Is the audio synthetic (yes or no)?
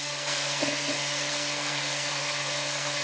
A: yes